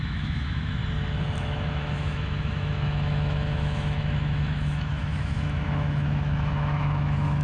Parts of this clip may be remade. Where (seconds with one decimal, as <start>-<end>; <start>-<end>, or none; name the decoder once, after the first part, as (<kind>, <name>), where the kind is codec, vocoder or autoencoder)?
0.0-0.8 (autoencoder, DAC-VAE); 1.4-7.4